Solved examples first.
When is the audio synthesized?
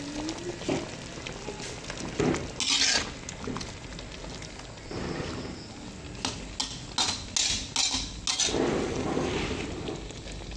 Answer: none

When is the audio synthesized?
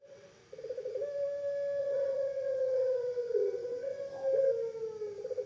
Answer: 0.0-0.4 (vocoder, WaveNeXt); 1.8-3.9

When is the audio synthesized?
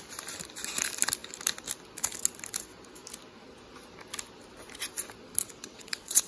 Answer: 5.4-6.3 (vocoder, WaveNeXt)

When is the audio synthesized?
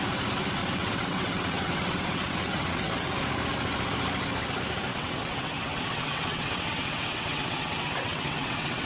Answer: 0.6-3.1 (vocoder, WaveNeXt); 4.9-8.9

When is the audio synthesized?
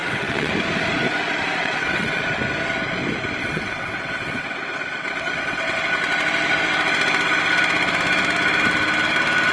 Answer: 0.0-0.5 (vocoder, WaveNeXt); 1.6-2.2; 3.4-5.8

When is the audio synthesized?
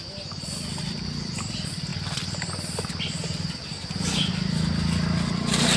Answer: none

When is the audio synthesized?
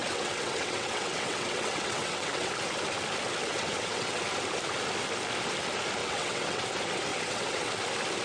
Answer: 0.0-2.5 (vocoder, WaveNeXt); 3.5-4.2; 6.0-6.6; 7.1-7.7